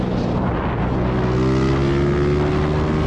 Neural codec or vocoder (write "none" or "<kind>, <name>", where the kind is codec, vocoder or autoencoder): none